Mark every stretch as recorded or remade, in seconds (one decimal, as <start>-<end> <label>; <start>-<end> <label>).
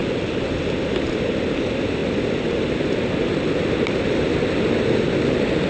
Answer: 0.0-5.7 recorded